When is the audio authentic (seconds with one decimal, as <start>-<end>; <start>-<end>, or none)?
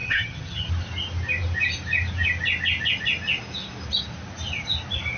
0.7-5.2